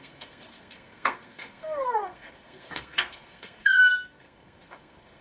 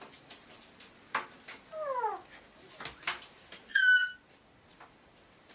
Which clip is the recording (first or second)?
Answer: second